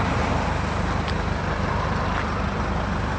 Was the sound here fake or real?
real